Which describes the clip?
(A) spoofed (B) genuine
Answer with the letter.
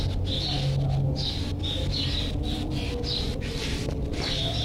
B